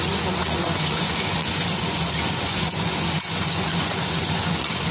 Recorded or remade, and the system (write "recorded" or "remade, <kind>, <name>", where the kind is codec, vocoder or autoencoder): remade, vocoder, Vocos